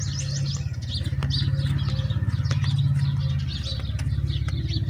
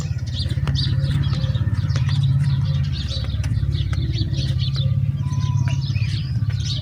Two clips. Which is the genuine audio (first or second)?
first